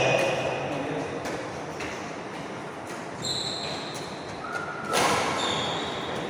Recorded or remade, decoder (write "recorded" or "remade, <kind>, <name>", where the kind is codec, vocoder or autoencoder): recorded